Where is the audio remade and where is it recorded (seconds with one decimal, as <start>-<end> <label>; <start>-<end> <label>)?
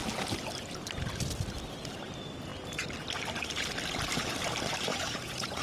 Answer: 0.0-4.9 recorded; 4.9-5.6 remade